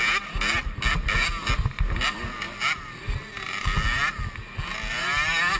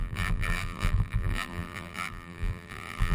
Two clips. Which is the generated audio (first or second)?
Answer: second